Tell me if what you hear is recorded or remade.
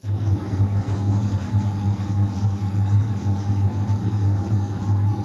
remade